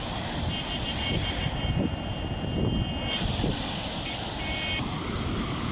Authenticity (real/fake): real